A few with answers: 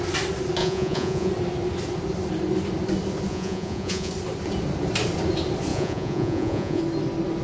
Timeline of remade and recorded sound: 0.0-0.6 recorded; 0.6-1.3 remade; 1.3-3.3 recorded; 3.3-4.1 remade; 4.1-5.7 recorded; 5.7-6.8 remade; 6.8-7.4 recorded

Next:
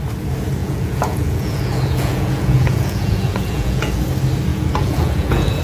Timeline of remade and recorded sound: 0.0-0.6 recorded; 0.6-4.0 remade; 4.0-4.5 recorded; 4.5-5.6 remade

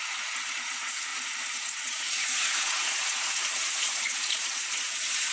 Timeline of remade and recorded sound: 0.0-5.3 remade

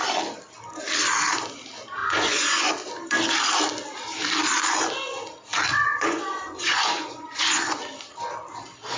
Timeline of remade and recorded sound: 0.0-2.0 recorded; 2.0-2.7 remade; 2.7-5.7 recorded; 5.7-7.8 remade; 7.8-9.0 recorded

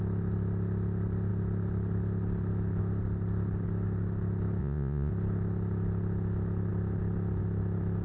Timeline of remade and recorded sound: 0.0-4.6 recorded; 4.6-5.1 remade; 5.1-8.0 recorded

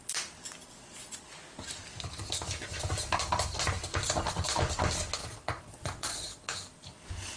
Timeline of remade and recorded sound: 0.0-5.2 recorded; 5.2-6.4 remade; 6.4-7.4 recorded